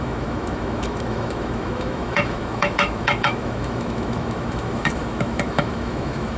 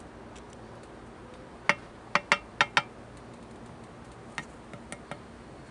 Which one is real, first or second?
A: second